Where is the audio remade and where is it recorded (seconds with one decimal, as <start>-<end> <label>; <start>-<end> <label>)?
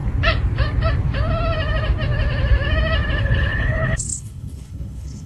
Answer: 0.0-3.2 recorded; 3.2-5.3 remade